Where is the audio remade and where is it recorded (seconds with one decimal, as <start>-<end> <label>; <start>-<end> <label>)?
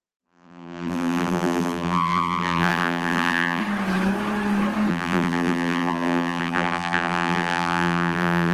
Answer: 0.0-3.6 remade; 3.6-4.9 recorded; 4.9-8.5 remade